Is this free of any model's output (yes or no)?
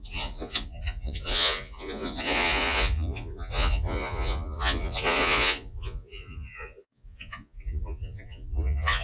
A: no